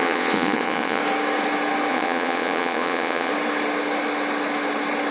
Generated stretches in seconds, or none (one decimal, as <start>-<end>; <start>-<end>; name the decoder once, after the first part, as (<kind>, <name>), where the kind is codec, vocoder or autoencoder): 0.0-1.0 (vocoder, Vocos); 1.9-3.3